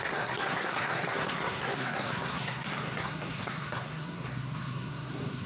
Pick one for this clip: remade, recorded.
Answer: remade